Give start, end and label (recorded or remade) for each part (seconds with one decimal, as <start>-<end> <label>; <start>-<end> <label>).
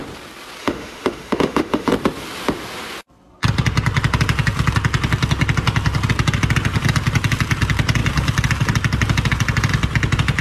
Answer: 0.0-0.6 recorded; 0.6-1.9 remade; 1.9-10.4 recorded